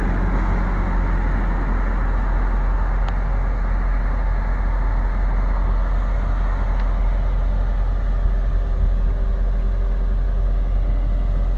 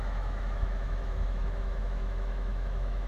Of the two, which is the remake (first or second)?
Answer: second